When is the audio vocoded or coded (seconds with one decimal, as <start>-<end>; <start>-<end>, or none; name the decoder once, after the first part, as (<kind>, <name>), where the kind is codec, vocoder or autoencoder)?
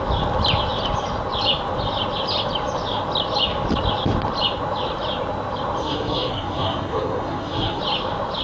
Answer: 5.8-7.8 (codec, SNAC)